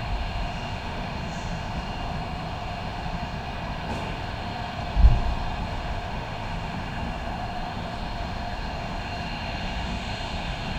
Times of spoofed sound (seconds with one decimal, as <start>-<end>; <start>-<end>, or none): 0.0-3.2; 3.9-4.5; 5.6-10.8